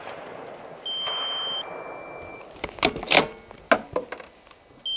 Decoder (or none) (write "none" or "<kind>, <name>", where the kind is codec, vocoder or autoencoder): none